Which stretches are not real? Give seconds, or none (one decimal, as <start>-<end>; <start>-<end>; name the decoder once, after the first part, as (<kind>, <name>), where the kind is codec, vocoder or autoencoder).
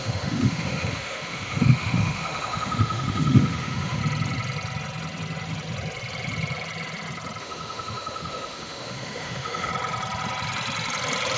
0.0-4.0 (autoencoder, DAC-VAE); 7.4-9.7